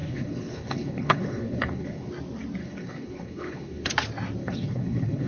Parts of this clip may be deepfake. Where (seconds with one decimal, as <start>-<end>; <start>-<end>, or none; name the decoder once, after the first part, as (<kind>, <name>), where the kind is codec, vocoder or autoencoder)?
0.0-2.1 (codec, HILCodec); 2.6-3.9; 4.4-5.3